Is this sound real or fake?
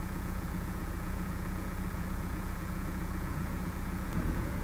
fake